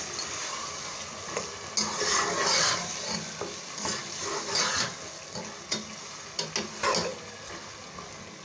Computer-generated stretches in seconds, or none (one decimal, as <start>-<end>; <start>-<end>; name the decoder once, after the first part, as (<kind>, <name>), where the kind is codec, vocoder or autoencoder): 0.4-1.0 (vocoder, BigVGAN v2); 2.1-4.5